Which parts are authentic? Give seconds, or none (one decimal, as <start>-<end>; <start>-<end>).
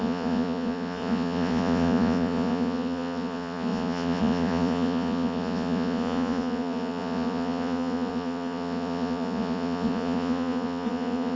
none